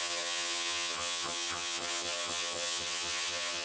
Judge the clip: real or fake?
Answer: fake